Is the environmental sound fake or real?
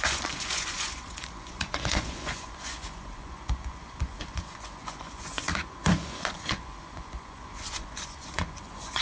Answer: fake